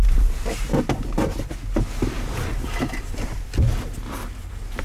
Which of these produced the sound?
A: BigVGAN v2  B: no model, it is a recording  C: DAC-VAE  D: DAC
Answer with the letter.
B